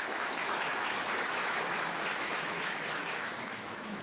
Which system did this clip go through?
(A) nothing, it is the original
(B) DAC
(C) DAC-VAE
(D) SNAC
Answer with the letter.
C